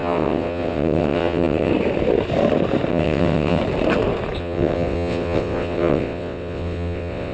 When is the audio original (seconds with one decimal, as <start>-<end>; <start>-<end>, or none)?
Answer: 1.7-2.9; 3.6-4.4